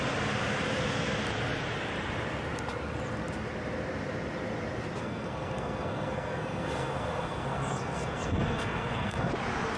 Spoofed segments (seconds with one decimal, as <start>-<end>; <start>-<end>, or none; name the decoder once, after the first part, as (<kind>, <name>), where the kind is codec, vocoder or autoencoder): 5.0-9.3 (codec, SNAC)

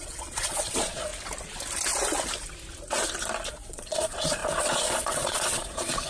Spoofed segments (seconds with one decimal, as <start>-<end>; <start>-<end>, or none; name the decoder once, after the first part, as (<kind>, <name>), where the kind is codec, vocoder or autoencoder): 0.0-1.1 (vocoder, Vocos); 3.5-6.1

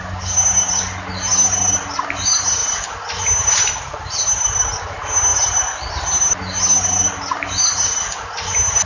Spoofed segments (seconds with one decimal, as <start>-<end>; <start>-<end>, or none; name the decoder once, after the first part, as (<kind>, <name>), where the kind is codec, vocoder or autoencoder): none